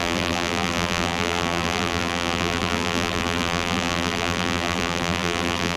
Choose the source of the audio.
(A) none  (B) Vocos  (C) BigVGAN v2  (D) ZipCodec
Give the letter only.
C